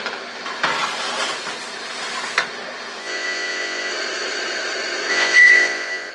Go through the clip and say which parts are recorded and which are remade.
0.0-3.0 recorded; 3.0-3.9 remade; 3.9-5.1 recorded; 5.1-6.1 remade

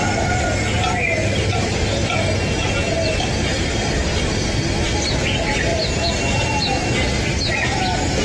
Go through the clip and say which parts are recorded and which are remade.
0.0-1.2 recorded; 1.2-1.9 remade; 1.9-3.5 recorded; 3.5-4.4 remade; 4.4-8.2 recorded

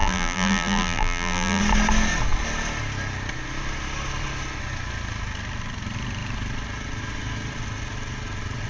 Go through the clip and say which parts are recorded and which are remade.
0.0-1.6 remade; 1.6-8.7 recorded

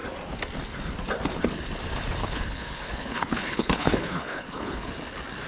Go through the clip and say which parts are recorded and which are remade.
0.0-2.2 recorded; 2.2-4.9 remade; 4.9-5.5 recorded